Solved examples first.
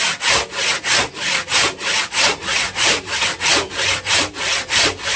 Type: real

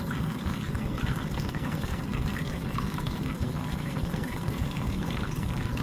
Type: fake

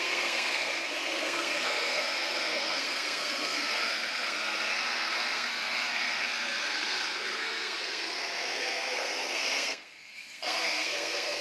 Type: fake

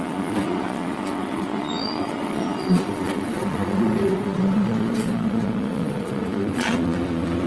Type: fake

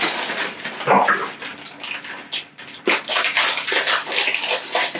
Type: real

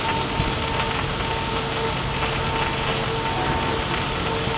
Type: real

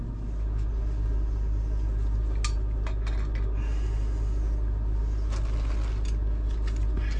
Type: real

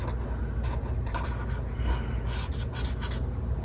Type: real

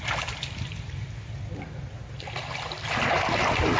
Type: real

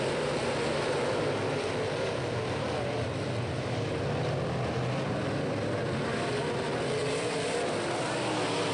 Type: real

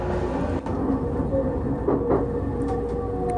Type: real